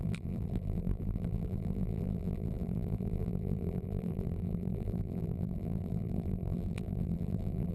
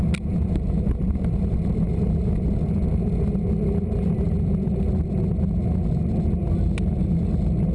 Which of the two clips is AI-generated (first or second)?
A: first